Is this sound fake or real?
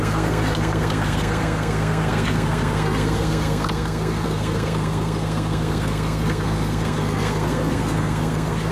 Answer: fake